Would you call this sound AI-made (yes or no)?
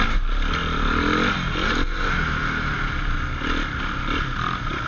no